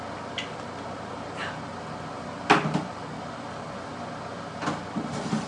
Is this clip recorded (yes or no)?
yes